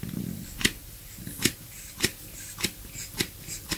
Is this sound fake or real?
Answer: real